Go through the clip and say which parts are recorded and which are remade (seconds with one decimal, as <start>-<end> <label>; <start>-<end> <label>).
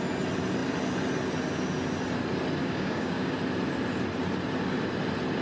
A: 0.0-2.6 recorded; 2.6-3.4 remade; 3.4-5.4 recorded